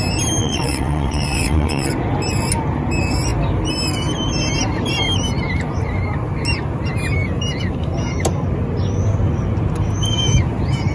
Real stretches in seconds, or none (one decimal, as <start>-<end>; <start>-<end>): 0.0-0.4; 1.9-10.9

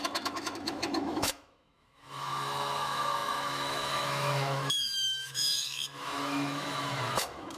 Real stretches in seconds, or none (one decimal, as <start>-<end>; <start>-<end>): none

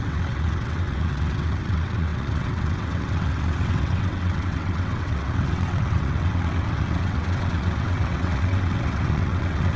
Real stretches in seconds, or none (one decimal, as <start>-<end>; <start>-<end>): none

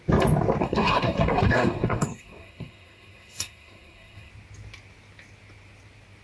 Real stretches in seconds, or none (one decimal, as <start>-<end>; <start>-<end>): 0.0-0.6; 4.3-6.2

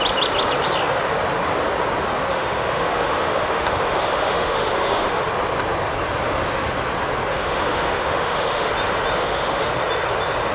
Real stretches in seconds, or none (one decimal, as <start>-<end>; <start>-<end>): 0.0-2.3; 5.2-7.3; 8.7-9.2; 9.7-10.5

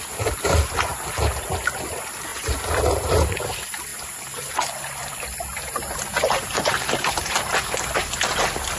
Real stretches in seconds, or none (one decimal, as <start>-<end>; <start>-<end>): 0.0-2.3; 3.4-6.1; 7.5-8.8

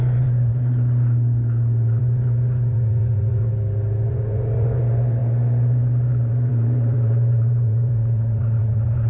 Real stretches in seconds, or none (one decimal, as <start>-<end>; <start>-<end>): 0.5-2.0; 3.5-4.1; 5.2-6.5

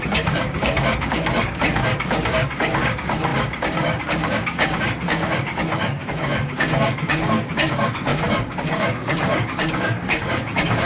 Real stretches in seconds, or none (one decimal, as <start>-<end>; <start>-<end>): none